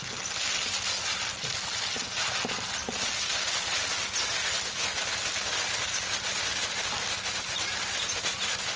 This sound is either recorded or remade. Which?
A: recorded